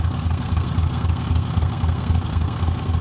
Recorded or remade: remade